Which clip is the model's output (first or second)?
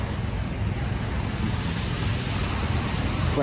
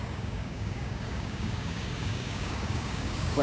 second